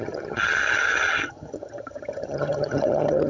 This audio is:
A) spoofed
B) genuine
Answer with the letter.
A